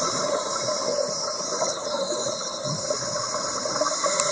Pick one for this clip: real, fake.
real